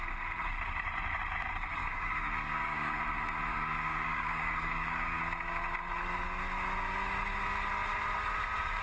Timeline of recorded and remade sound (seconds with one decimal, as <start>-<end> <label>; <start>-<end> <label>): 0.0-1.8 recorded; 1.8-3.0 remade; 3.0-3.5 recorded; 3.5-5.2 remade; 5.2-8.8 recorded